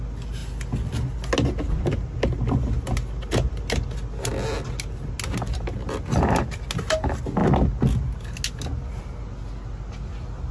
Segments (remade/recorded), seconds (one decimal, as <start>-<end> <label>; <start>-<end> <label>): 0.0-10.5 recorded